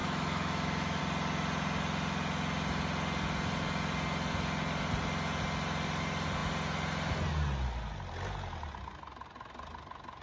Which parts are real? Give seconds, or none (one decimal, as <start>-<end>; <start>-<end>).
1.0-10.2